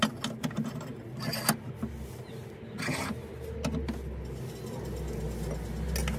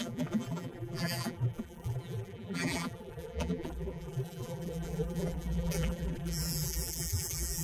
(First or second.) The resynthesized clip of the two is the second